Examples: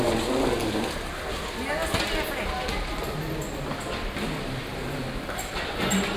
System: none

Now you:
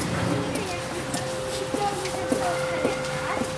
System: none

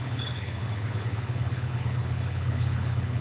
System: codec, HILCodec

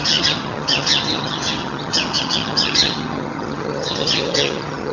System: vocoder, HiFi-GAN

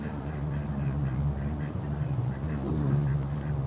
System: vocoder, Vocos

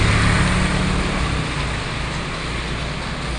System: none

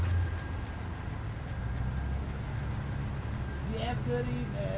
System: none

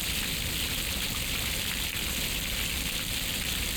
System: none